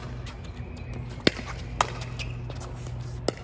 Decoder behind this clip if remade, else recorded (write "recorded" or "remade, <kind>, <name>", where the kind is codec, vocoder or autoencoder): recorded